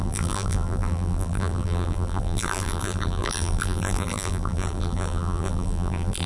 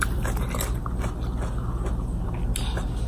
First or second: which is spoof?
first